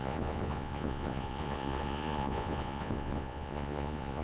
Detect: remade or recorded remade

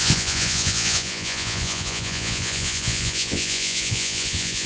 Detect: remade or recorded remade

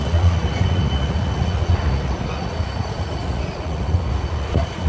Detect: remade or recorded remade